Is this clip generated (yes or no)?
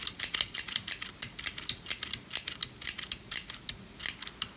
no